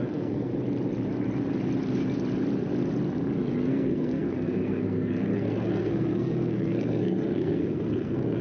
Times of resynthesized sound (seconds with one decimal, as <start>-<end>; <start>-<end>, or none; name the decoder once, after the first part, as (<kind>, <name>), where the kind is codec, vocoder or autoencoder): 0.0-0.5 (codec, SNAC); 3.6-8.4